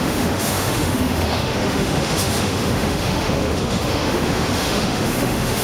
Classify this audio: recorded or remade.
remade